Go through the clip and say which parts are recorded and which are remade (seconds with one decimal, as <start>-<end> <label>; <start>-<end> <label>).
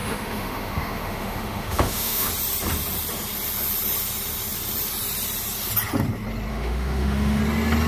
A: 0.0-2.3 remade; 2.3-6.5 recorded; 6.5-7.4 remade; 7.4-7.9 recorded